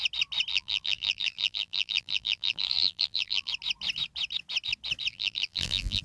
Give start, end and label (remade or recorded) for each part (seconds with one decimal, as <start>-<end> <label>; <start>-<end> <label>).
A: 0.0-0.5 recorded; 0.5-3.5 remade; 3.5-5.1 recorded; 5.1-6.0 remade